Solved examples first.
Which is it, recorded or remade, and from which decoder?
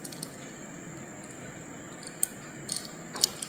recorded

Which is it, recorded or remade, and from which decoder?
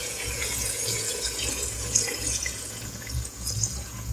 remade, vocoder, Vocos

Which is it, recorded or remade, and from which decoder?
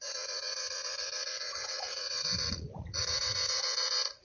remade, vocoder, Vocos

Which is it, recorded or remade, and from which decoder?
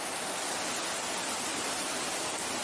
recorded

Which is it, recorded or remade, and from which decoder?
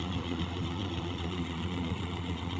remade, vocoder, Vocos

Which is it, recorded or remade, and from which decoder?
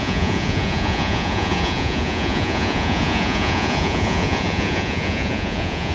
remade, vocoder, Vocos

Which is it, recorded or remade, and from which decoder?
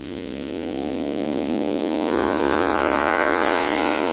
remade, vocoder, Vocos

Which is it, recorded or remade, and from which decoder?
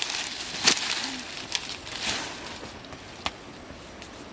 recorded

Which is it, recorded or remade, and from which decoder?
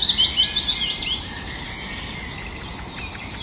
recorded